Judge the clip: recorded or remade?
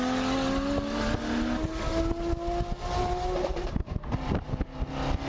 recorded